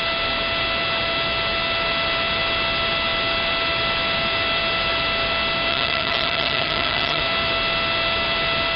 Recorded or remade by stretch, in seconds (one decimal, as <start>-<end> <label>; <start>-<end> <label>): 0.0-5.7 recorded; 5.7-7.2 remade; 7.2-8.8 recorded